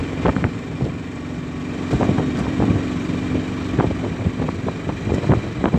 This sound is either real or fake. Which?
fake